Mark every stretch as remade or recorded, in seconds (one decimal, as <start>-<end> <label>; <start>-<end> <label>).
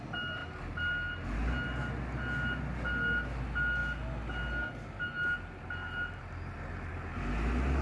0.0-7.8 recorded